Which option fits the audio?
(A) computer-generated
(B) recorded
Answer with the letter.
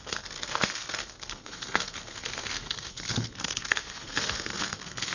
A